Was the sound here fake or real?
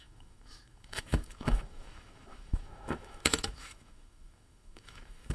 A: fake